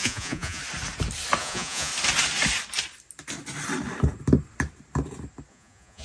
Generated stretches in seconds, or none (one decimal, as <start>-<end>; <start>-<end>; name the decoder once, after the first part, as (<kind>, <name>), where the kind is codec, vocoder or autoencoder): 0.0-0.6 (vocoder, Vocos); 1.4-1.9; 5.5-6.0